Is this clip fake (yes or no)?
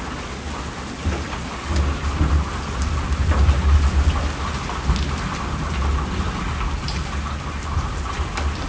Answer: no